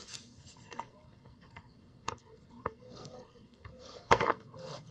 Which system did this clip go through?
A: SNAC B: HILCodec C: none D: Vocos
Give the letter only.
A